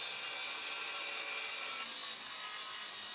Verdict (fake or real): real